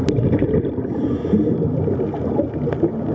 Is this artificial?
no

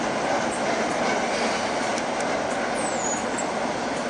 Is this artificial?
no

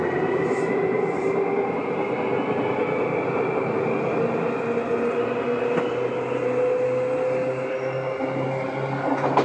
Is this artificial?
no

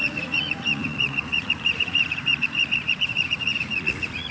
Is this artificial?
yes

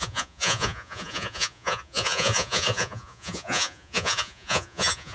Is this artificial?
yes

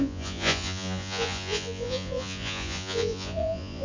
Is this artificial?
yes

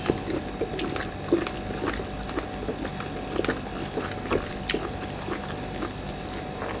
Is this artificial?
no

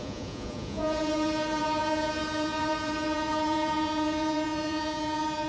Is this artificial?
yes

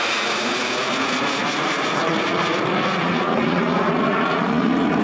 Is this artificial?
yes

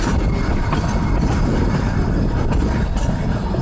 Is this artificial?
no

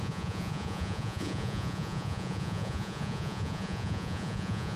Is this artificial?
yes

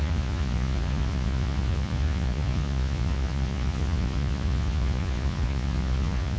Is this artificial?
yes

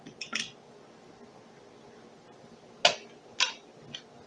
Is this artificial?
no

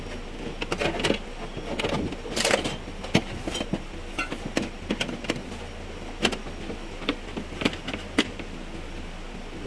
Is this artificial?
no